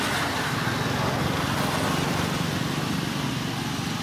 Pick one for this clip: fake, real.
real